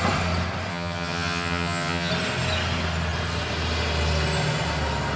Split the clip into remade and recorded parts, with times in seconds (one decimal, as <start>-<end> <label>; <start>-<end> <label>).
0.0-0.7 recorded; 0.7-2.1 remade; 2.1-5.2 recorded